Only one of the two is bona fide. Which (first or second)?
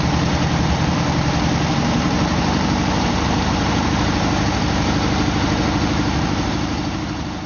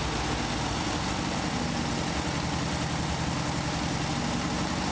second